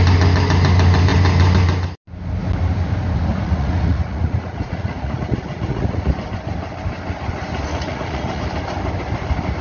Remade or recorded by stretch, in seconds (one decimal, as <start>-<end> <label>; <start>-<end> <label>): 0.0-3.3 recorded; 3.3-6.1 remade; 6.1-7.7 recorded; 7.7-8.4 remade; 8.4-9.6 recorded